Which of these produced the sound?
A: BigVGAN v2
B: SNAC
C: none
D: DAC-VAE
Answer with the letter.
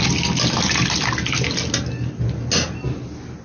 C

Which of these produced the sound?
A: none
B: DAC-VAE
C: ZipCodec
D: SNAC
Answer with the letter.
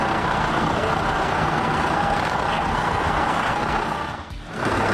D